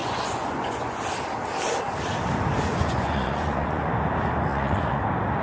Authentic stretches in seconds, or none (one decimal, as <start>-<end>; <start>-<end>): 1.0-2.7; 3.9-4.5; 5.0-5.4